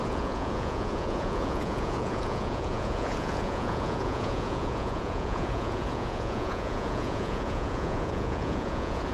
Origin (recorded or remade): remade